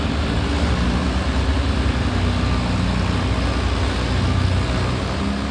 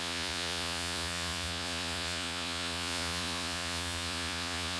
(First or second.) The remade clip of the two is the second